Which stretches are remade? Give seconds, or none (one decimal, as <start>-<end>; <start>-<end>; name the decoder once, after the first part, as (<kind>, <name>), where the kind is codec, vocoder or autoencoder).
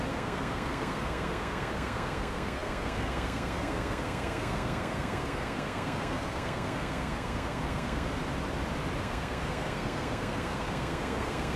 0.0-8.2 (codec, SNAC); 9.0-11.6